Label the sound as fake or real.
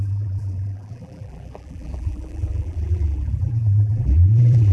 fake